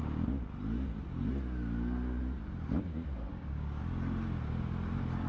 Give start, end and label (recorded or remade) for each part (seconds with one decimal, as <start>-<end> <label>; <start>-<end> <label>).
0.0-3.3 recorded; 3.3-3.8 remade; 3.8-5.3 recorded